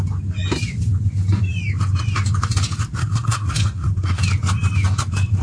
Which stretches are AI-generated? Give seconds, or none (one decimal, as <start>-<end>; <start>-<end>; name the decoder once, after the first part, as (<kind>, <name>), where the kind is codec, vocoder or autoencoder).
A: 3.0-4.2 (codec, SNAC)